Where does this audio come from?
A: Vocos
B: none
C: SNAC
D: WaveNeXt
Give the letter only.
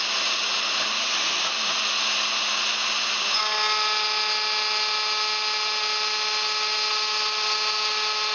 B